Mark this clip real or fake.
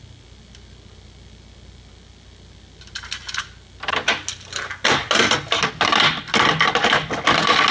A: real